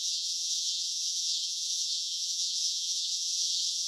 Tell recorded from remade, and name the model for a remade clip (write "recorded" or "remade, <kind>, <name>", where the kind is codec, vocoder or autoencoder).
remade, vocoder, BigVGAN v2